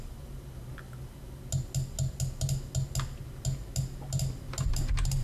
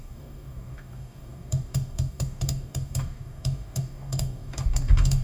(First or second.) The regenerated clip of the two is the second